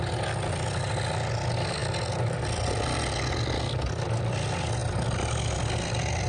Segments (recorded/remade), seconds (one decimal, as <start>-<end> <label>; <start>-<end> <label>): 0.0-6.3 recorded